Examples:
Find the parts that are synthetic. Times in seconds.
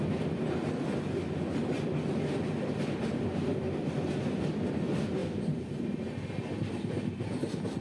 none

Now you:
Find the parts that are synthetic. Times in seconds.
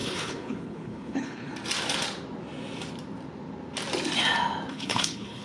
0.0-1.5; 4.7-5.4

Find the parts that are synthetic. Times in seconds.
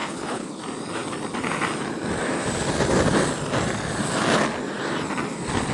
0.0-0.6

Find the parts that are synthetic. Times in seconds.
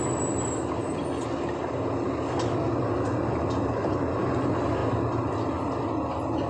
none